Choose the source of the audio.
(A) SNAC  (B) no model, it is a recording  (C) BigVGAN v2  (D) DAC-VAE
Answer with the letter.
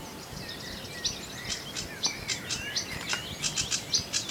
B